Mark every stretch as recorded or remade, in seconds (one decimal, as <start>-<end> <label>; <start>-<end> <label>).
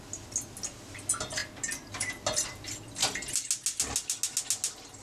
0.0-5.0 recorded